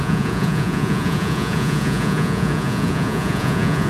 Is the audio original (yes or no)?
no